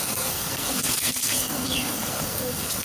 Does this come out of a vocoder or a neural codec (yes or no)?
yes